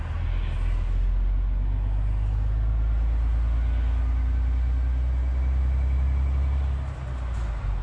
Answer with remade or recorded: recorded